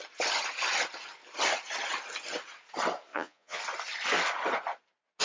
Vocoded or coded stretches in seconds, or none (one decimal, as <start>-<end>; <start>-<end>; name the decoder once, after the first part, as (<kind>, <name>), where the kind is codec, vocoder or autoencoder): 3.1-3.6 (vocoder, Vocos)